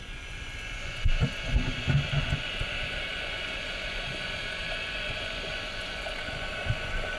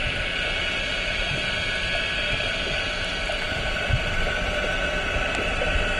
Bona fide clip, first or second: second